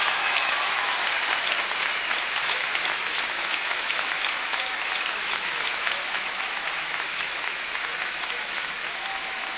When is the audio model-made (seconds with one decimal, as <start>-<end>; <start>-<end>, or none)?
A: 0.0-1.0; 2.4-9.6